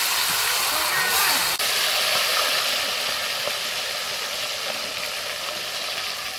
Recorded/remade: recorded